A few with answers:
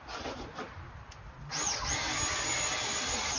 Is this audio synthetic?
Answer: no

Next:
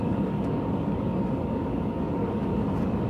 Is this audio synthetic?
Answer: yes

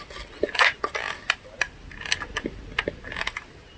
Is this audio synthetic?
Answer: no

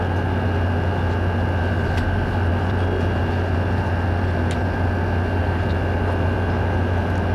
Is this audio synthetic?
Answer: no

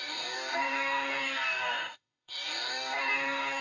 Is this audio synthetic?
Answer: yes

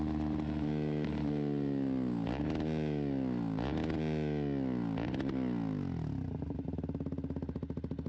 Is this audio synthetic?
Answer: no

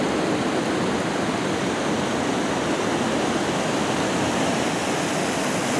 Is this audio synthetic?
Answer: no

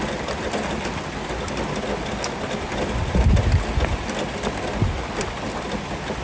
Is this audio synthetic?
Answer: no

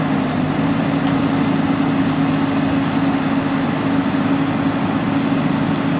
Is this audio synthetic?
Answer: no